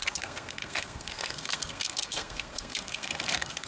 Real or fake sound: fake